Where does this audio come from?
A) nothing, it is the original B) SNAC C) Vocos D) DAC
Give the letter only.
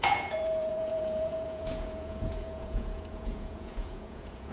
C